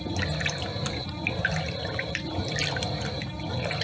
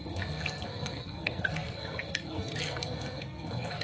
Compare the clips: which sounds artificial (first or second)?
second